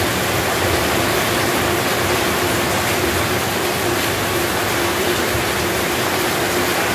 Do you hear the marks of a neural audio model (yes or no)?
no